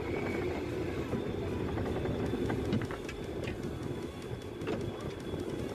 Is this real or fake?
real